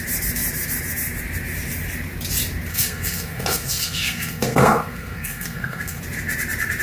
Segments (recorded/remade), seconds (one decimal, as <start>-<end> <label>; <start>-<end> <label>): 0.0-2.7 recorded; 2.7-6.0 remade; 6.0-6.8 recorded